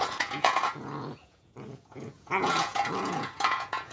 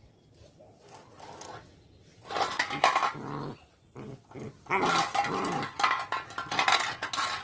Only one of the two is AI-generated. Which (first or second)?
first